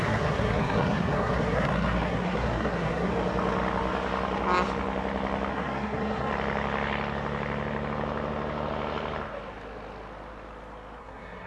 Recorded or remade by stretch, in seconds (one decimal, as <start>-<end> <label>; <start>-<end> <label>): 0.0-3.1 remade; 3.1-5.5 recorded; 5.5-6.3 remade; 6.3-11.0 recorded; 11.0-11.5 remade